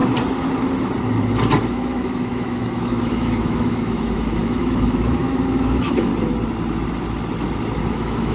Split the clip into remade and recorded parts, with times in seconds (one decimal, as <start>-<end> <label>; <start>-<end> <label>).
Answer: 0.0-1.6 recorded; 1.6-6.1 remade; 6.1-7.9 recorded; 7.9-8.3 remade